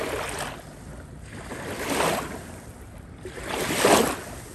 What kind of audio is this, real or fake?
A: real